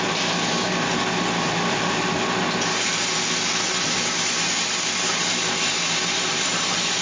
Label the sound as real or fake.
real